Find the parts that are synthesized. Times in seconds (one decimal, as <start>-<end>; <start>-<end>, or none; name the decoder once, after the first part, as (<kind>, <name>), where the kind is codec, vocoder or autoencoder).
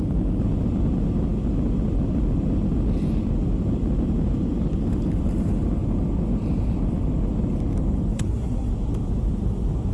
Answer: 8.1-8.7 (codec, SNAC)